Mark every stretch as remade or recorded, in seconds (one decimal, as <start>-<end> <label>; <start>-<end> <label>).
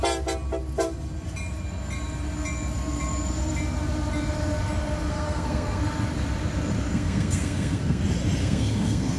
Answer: 0.0-5.1 recorded; 5.1-5.8 remade; 5.8-6.9 recorded; 6.9-8.0 remade; 8.0-8.4 recorded; 8.4-9.2 remade